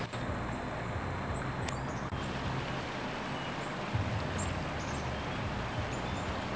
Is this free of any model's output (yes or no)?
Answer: yes